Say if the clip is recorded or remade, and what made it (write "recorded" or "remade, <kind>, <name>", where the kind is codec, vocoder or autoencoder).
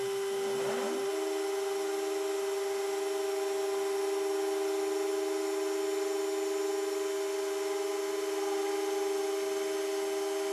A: recorded